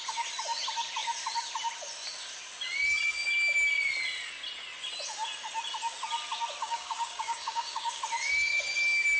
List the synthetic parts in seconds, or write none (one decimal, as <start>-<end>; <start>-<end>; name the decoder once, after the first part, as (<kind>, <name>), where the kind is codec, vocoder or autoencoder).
6.6-8.0 (codec, DAC)